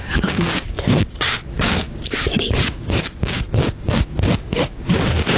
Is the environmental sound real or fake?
fake